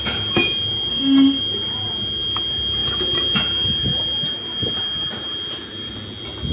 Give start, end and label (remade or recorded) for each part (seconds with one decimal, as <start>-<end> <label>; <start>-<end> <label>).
0.0-0.9 recorded; 0.9-1.4 remade; 1.4-6.5 recorded